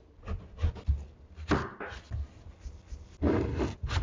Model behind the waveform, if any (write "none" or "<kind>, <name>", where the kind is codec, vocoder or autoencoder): none